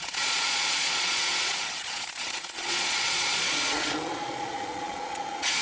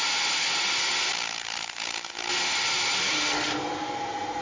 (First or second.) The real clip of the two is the second